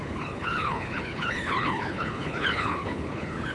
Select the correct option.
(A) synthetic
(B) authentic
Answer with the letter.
A